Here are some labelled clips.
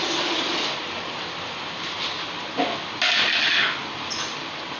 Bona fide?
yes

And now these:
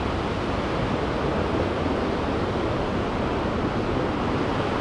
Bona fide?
yes